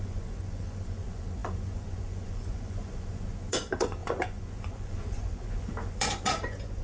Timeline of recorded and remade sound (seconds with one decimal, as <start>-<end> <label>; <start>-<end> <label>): 0.0-6.8 remade